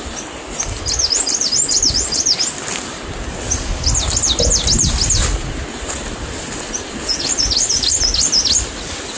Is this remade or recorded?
recorded